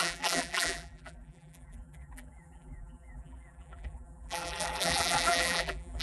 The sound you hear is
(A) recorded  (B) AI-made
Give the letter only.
B